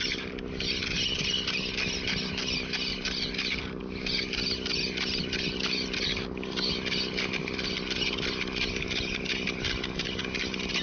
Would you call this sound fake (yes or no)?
no